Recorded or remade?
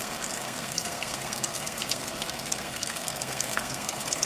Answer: remade